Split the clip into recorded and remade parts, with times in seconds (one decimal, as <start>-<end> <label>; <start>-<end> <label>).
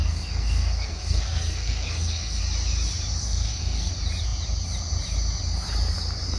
0.0-2.4 remade; 2.4-3.2 recorded; 3.2-3.9 remade; 3.9-6.4 recorded